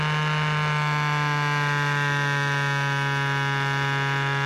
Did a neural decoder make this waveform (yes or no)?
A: no